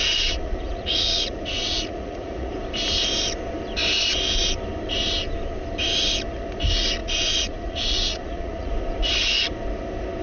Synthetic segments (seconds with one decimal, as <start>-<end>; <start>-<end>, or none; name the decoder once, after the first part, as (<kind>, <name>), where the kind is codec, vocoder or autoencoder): 0.0-2.5 (vocoder, Vocos); 7.0-8.7